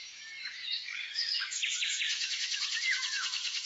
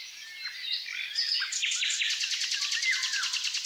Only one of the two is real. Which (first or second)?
second